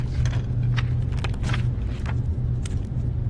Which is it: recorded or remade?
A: recorded